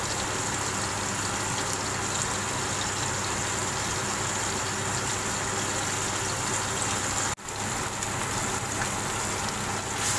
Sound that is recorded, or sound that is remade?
recorded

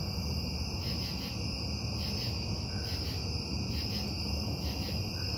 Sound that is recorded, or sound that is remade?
recorded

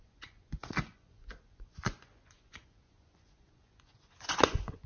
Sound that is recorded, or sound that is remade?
remade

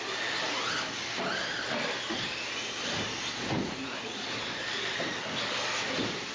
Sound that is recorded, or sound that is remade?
recorded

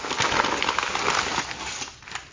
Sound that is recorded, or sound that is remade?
recorded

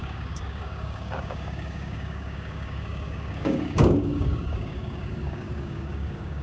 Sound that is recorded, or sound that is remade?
remade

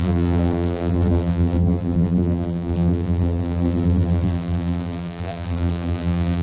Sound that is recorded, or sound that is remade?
remade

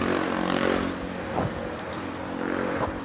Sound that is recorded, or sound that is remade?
recorded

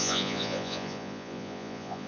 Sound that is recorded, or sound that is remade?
remade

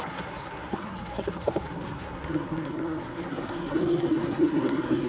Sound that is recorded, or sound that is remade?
remade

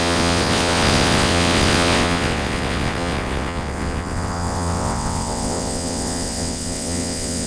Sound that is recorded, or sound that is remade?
remade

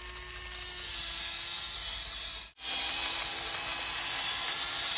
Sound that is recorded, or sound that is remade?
recorded